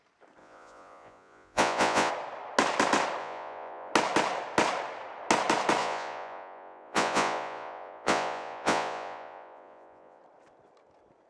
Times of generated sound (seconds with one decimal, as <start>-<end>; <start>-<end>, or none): 0.4-2.1; 3.2-3.9; 5.8-10.2